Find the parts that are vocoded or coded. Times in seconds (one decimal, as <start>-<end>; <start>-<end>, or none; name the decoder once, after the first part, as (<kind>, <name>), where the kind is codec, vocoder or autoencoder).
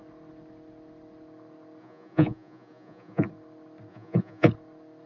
1.8-3.3 (vocoder, Vocos); 3.9-4.5